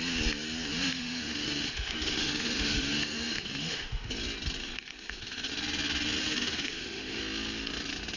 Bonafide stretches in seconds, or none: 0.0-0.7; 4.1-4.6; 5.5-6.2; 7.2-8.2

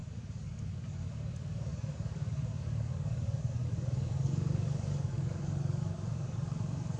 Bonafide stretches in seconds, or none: none